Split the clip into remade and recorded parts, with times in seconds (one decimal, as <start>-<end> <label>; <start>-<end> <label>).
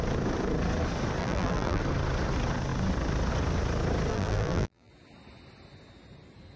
0.0-1.2 recorded; 1.2-1.8 remade; 1.8-4.1 recorded; 4.1-4.9 remade; 4.9-6.6 recorded